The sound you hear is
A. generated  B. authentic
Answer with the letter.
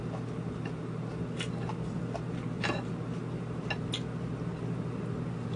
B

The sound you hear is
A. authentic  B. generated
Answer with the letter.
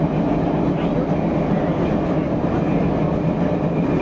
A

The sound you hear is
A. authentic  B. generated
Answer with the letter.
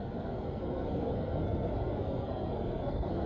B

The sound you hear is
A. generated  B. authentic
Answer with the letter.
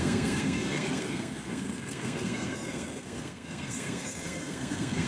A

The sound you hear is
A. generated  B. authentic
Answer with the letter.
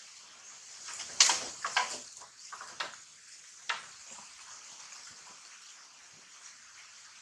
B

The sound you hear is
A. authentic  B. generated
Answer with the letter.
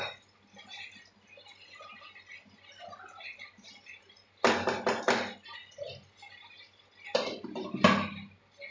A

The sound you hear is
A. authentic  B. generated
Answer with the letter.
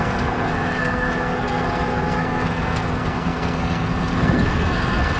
B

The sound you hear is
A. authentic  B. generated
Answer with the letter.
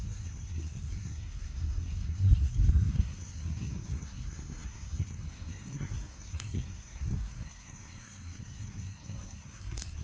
B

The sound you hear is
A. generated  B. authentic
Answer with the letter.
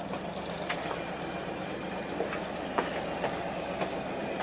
B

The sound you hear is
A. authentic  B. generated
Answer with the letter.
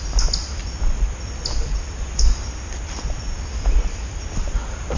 A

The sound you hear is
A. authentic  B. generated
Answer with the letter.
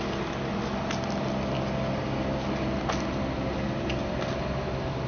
A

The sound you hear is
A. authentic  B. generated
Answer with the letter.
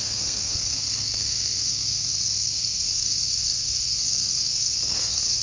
B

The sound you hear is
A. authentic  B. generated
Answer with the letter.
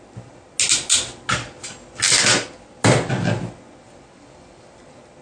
A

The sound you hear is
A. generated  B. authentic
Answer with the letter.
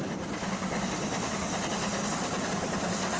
B